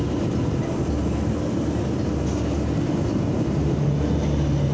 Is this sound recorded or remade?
recorded